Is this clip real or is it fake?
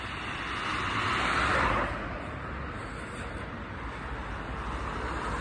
real